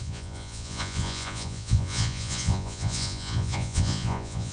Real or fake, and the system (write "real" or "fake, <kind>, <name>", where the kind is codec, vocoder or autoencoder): fake, vocoder, Vocos